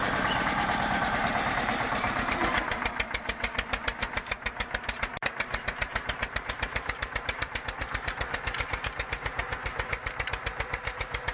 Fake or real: fake